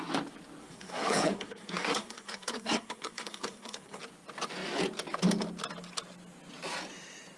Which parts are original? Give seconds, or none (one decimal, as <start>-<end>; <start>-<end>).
0.0-0.6; 4.0-7.4